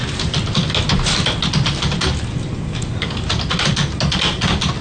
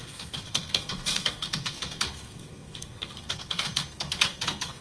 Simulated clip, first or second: second